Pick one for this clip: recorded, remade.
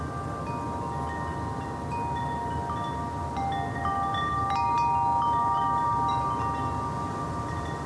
recorded